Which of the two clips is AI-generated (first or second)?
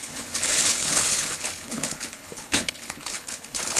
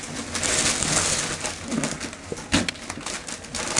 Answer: first